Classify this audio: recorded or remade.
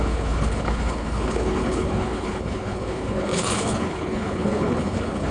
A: remade